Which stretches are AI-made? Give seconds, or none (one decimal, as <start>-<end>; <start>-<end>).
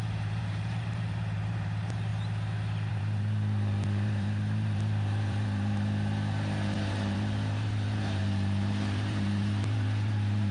0.0-2.1; 2.9-10.5